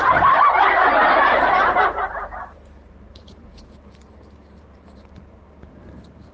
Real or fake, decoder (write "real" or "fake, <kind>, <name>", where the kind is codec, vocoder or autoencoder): fake, vocoder, BigVGAN v2